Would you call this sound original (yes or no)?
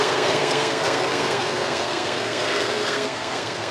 no